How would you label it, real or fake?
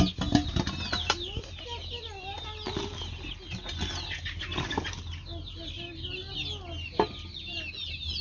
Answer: real